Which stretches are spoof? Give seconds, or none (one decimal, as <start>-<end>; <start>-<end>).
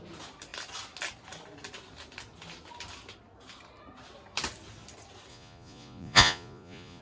5.3-7.0